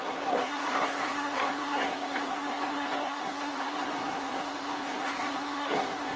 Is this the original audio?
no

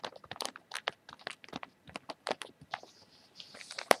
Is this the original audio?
yes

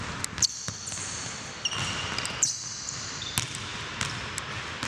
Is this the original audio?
yes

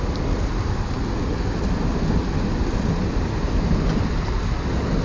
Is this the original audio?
yes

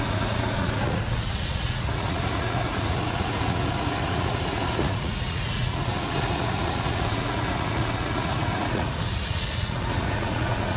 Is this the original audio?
no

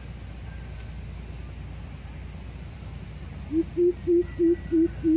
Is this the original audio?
yes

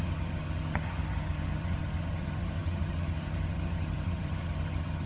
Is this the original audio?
no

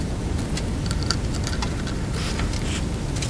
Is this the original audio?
yes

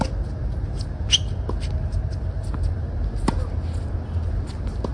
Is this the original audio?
yes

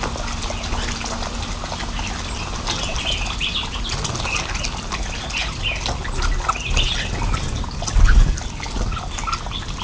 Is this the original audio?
yes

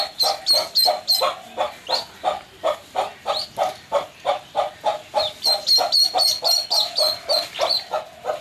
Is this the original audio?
yes